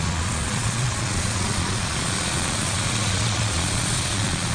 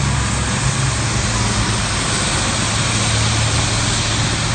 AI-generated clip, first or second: first